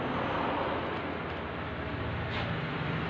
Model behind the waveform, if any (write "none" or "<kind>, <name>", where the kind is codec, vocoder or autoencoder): none